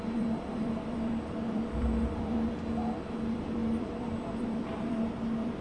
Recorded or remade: remade